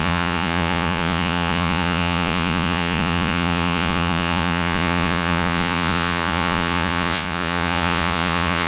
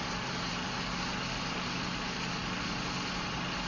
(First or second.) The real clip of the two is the second